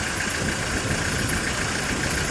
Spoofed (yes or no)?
no